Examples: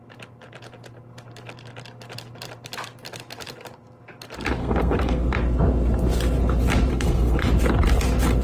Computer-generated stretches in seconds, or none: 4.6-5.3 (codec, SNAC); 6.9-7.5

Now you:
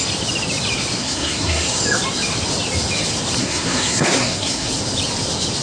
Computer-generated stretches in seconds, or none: 1.0-1.8 (codec, SNAC); 3.4-4.7

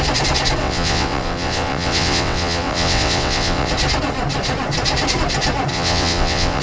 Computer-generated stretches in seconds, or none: 0.6-3.7 (vocoder, WaveNeXt); 5.7-6.6

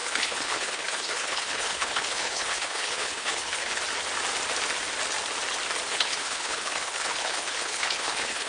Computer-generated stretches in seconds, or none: 0.0-3.8 (codec, HILCodec); 5.9-8.5

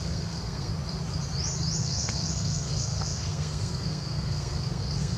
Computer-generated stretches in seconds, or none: 0.0-0.7 (codec, SNAC); 1.8-5.2

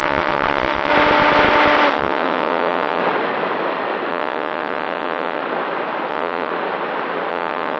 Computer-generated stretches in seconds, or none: 0.0-0.9 (vocoder, WaveNeXt); 1.9-3.0; 4.1-5.4; 6.1-6.5; 7.3-7.8

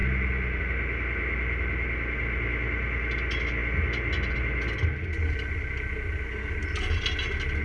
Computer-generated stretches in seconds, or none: none